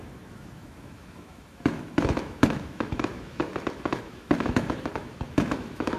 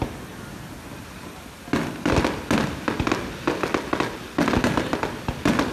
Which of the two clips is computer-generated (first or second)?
first